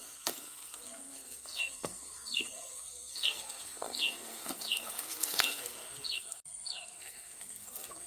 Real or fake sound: fake